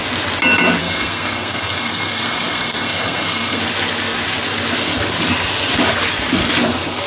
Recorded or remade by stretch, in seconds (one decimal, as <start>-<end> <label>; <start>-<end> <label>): 0.0-0.8 recorded; 0.8-3.6 remade; 3.6-7.1 recorded